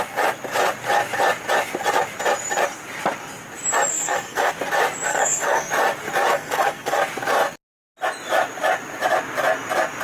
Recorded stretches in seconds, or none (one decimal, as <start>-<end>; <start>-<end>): 0.0-3.9; 4.5-5.1; 5.7-6.3; 7.0-10.0